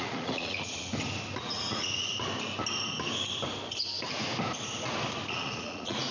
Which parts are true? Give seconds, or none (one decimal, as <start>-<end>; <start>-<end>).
0.9-1.4; 2.1-5.3